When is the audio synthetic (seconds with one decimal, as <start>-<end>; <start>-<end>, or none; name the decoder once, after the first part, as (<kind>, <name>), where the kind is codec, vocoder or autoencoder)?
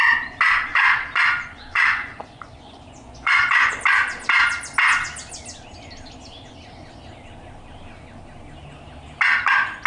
0.7-3.7 (vocoder, Vocos)